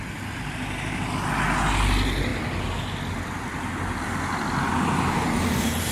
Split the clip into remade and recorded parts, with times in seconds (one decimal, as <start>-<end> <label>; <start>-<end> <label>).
0.0-5.9 recorded